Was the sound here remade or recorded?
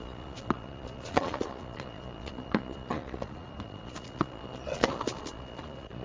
remade